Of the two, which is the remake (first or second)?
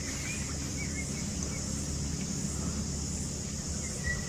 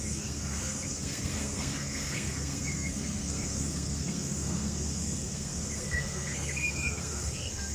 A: second